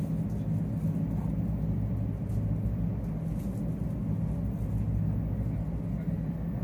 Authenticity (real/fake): real